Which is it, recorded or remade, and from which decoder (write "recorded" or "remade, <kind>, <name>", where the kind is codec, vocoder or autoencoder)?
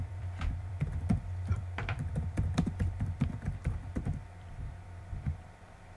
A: remade, vocoder, BigVGAN v2